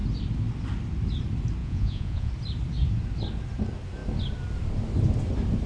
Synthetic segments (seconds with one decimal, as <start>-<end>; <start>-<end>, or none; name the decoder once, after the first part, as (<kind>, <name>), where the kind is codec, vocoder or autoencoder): 1.6-2.3 (vocoder, Vocos)